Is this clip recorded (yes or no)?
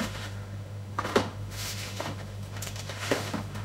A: no